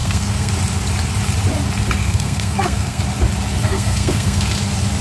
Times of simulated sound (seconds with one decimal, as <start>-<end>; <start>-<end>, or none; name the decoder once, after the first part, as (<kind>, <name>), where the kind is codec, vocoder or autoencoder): 0.0-0.5 (codec, SNAC); 2.0-3.0; 3.6-4.5